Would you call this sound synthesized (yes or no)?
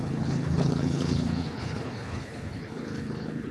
yes